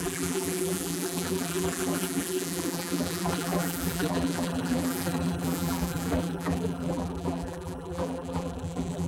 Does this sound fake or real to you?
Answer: fake